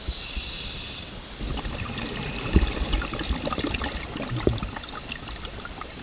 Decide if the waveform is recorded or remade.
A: recorded